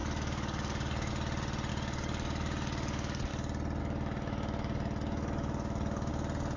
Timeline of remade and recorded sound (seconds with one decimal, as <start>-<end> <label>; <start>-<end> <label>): 0.0-1.1 remade; 1.1-1.7 recorded; 1.7-3.3 remade; 3.3-3.8 recorded; 3.8-6.1 remade; 6.1-6.6 recorded